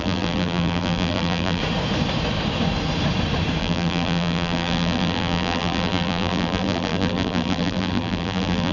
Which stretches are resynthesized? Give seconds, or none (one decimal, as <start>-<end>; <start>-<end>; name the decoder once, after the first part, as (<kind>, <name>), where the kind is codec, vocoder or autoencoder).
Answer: 0.0-1.6 (vocoder, BigVGAN v2); 3.6-8.7